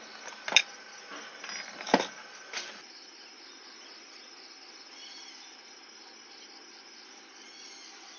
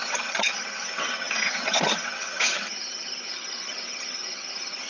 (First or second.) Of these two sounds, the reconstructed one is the second